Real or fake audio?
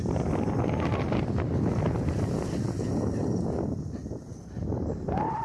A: real